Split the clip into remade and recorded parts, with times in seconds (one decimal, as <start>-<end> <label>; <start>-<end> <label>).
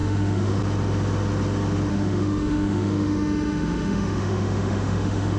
0.0-0.6 remade; 0.6-1.9 recorded; 1.9-5.4 remade